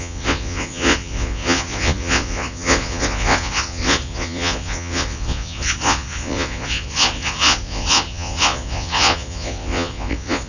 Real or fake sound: fake